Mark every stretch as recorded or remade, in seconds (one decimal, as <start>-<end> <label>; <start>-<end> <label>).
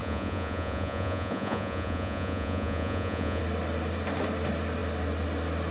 0.0-3.4 remade; 3.4-5.7 recorded